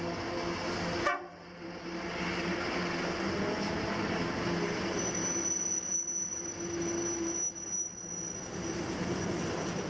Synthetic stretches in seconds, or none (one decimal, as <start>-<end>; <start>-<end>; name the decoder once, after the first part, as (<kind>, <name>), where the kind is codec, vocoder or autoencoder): none